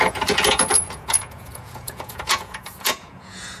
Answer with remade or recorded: remade